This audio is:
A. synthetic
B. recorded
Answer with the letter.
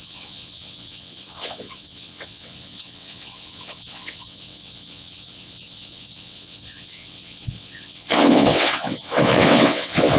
A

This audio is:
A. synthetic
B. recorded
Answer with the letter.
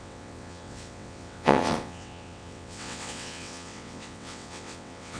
A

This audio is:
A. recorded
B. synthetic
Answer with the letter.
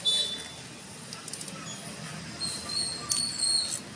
A